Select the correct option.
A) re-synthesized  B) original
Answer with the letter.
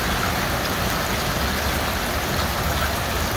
B